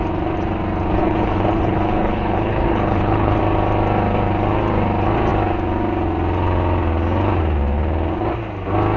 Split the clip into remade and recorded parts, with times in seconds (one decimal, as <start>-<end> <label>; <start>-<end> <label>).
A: 0.0-1.0 recorded; 1.0-3.4 remade; 3.4-9.0 recorded